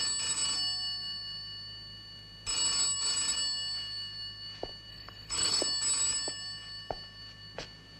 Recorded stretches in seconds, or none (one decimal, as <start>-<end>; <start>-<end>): 0.0-4.9; 5.6-8.0